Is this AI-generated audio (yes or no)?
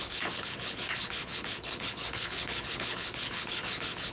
yes